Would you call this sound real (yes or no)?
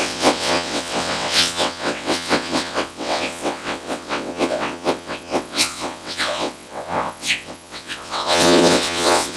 no